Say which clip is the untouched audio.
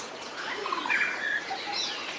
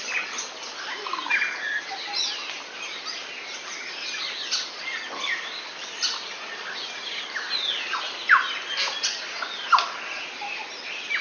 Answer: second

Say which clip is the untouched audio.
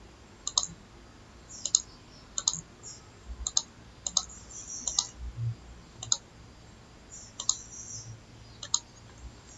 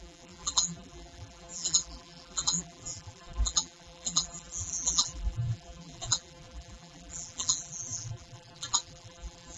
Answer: first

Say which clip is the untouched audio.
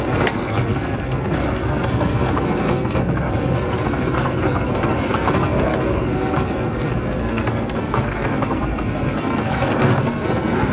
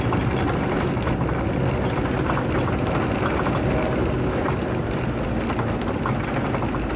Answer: second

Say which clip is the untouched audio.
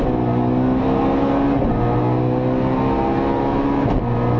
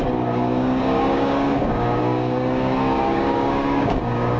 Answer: first